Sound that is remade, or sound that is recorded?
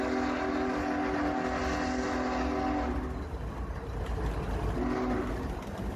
recorded